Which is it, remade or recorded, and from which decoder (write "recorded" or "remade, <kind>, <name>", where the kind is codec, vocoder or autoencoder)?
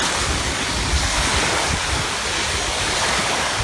remade, codec, DAC